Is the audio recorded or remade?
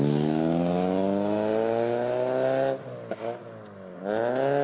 recorded